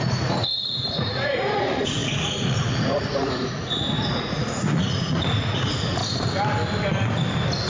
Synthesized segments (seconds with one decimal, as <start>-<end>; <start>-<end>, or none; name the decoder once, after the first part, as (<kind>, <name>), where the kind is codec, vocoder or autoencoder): 0.0-6.0 (vocoder, Vocos)